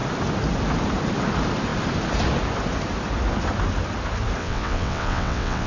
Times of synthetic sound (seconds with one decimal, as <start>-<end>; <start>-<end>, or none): 4.4-5.7